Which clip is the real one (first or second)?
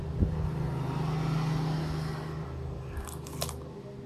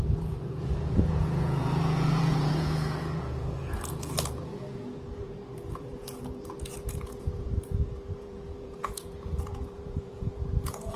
first